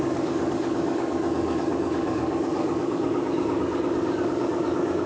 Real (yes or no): no